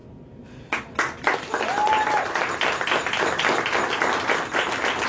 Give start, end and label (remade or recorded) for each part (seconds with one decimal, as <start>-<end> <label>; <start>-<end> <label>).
0.0-5.1 recorded